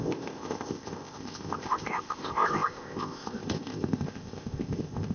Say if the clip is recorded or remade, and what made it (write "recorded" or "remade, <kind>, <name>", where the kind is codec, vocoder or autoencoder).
remade, codec, ZipCodec